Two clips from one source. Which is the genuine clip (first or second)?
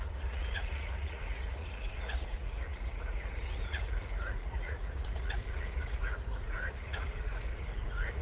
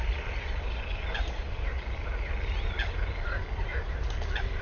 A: second